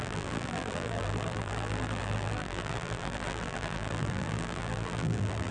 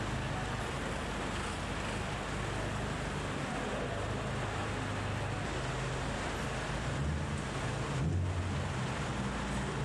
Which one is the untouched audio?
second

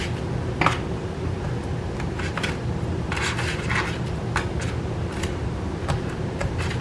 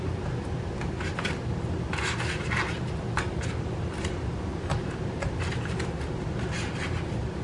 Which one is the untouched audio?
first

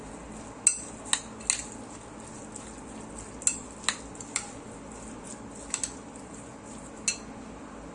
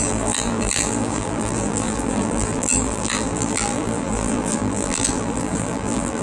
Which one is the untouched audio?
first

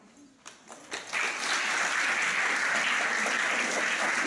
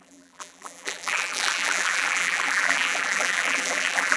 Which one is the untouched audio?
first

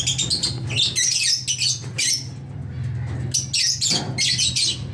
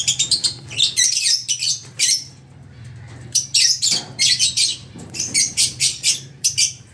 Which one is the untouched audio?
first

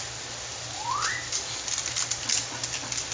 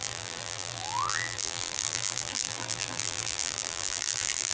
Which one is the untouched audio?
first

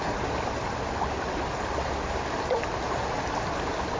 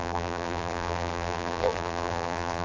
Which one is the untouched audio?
first